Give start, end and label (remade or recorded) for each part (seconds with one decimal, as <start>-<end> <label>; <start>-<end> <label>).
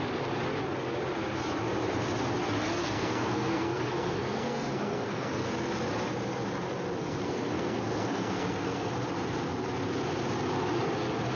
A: 0.0-2.8 recorded; 2.8-5.3 remade; 5.3-7.0 recorded; 7.0-8.9 remade; 8.9-11.4 recorded